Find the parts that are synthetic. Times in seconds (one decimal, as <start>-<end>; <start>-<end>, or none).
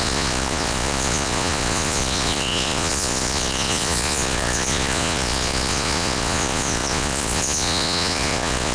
0.0-8.7